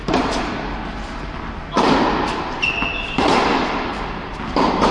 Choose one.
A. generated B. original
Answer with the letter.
B